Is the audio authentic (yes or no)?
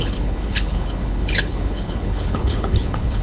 no